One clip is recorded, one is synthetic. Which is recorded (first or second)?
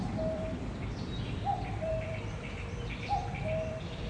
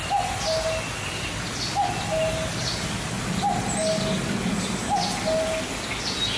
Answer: second